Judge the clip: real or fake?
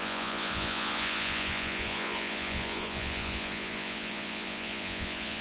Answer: fake